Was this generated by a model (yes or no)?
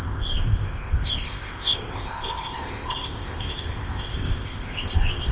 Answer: yes